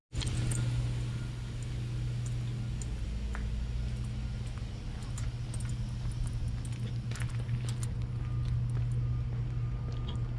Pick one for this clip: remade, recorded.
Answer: recorded